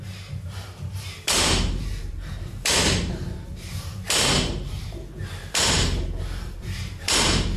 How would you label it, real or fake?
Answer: fake